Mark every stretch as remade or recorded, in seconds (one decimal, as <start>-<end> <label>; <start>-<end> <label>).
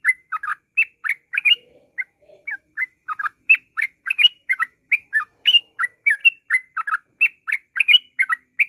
0.0-0.5 remade; 0.5-1.3 recorded; 1.3-6.2 remade; 6.2-8.7 recorded